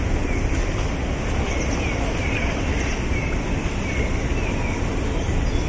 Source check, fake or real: real